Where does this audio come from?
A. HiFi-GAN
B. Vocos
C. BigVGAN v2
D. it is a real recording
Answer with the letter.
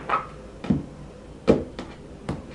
D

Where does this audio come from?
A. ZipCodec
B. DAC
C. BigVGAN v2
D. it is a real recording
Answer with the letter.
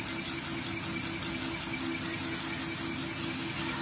D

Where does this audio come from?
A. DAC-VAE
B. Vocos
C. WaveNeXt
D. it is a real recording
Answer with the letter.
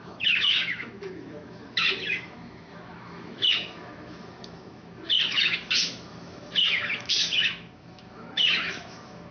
A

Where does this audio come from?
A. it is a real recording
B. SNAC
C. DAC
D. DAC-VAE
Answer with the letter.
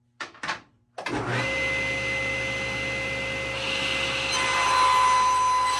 A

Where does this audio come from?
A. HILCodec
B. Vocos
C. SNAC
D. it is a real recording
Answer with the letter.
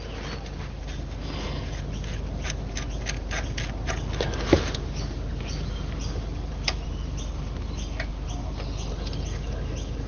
D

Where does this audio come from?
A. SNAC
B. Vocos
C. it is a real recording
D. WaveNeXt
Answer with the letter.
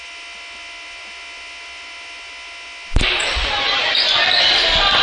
C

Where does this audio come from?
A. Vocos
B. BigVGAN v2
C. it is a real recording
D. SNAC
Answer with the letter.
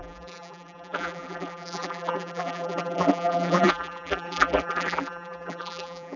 B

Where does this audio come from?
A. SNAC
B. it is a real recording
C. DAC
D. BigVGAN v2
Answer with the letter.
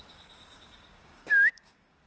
C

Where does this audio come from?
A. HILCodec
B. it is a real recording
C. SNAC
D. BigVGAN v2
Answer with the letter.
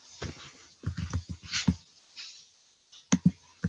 B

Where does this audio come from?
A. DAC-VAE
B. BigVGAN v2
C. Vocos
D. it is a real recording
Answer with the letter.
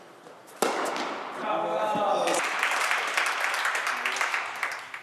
D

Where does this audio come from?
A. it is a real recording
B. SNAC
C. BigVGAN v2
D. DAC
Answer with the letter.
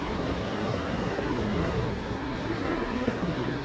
B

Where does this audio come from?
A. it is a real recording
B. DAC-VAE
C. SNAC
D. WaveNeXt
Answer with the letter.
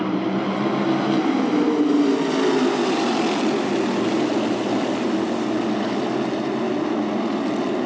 A